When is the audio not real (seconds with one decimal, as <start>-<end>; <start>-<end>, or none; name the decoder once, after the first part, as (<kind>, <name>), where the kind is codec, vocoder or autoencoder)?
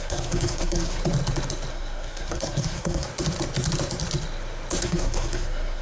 0.0-1.0 (codec, SNAC); 1.7-3.1; 4.8-5.8